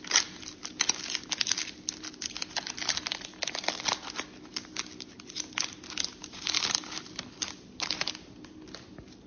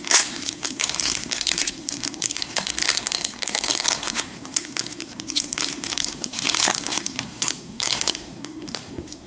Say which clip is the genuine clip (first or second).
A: first